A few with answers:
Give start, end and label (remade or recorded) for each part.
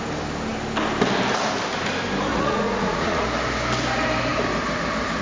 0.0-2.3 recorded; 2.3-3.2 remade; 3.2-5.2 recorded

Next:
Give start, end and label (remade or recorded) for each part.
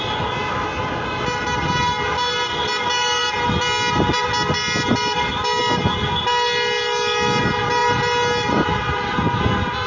0.0-9.9 recorded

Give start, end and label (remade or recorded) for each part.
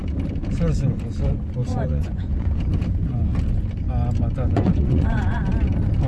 0.0-1.6 recorded; 1.6-2.6 remade; 2.6-4.5 recorded; 4.5-5.4 remade; 5.4-6.1 recorded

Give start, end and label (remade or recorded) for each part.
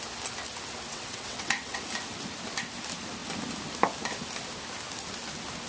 0.0-0.9 recorded; 0.9-1.8 remade; 1.8-5.7 recorded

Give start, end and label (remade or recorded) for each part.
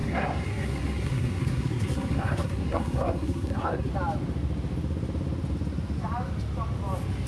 0.0-3.9 remade; 3.9-7.3 recorded